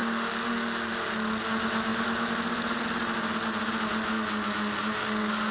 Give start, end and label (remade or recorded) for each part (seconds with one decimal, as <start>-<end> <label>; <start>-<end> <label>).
0.0-5.5 recorded

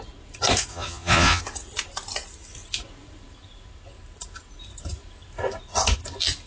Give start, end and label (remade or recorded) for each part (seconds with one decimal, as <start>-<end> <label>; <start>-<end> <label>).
0.0-0.7 recorded; 0.7-1.4 remade; 1.4-6.5 recorded

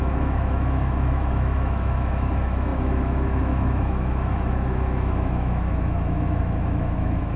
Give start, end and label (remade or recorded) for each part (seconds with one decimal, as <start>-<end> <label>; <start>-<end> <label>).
0.0-7.4 remade

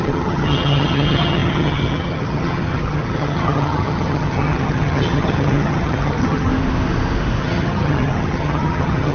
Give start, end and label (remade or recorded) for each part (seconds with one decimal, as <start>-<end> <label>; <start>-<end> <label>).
0.0-6.5 remade; 6.5-7.4 recorded; 7.4-9.1 remade

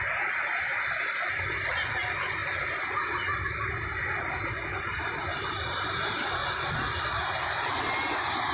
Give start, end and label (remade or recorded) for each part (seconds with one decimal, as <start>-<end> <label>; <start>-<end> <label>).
0.0-8.5 recorded

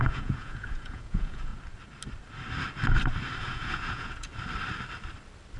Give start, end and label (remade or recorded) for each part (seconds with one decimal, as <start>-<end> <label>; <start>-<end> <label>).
0.0-1.5 remade; 1.5-3.4 recorded; 3.4-4.3 remade; 4.3-5.6 recorded